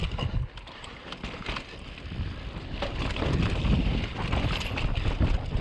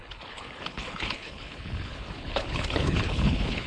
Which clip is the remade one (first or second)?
second